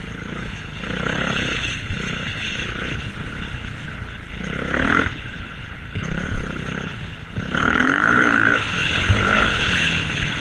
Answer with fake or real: fake